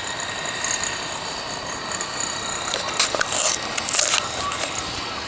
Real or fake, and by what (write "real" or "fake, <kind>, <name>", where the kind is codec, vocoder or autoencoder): real